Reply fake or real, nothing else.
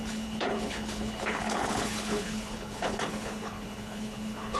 fake